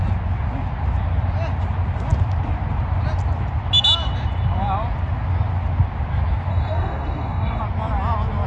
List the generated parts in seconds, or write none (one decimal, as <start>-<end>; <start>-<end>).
6.5-7.6